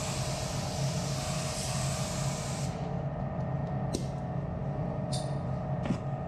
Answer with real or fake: real